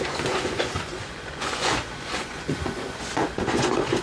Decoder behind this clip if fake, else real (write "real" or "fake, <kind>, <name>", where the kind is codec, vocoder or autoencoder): fake, vocoder, Vocos